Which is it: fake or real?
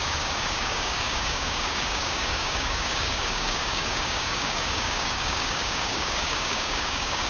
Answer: fake